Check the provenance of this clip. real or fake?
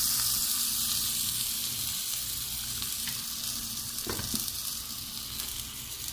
real